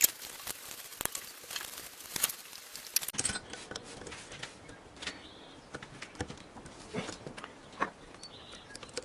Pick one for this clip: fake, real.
real